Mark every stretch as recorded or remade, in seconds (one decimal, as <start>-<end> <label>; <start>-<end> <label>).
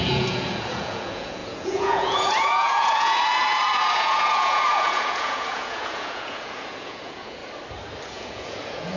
0.0-7.4 remade; 7.4-8.1 recorded; 8.1-9.0 remade